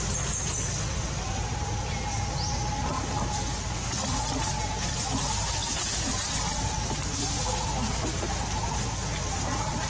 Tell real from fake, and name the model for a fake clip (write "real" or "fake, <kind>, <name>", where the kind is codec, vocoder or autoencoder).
real